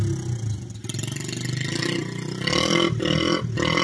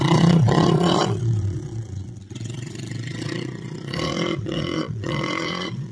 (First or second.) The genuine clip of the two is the first